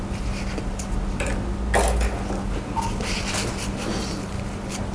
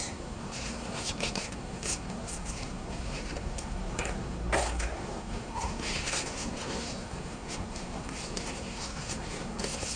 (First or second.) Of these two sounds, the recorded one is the first